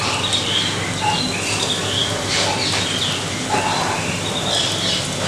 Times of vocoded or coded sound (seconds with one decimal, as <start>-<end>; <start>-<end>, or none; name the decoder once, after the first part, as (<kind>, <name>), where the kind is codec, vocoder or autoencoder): 2.0-5.3 (vocoder, BigVGAN v2)